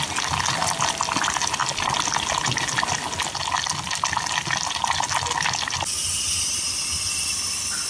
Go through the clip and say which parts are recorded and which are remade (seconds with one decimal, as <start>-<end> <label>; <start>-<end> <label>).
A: 0.0-7.9 recorded